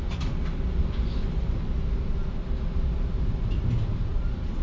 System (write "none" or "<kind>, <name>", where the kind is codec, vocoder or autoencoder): none